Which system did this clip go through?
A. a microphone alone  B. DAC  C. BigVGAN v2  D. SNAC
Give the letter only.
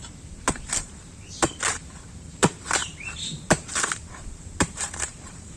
C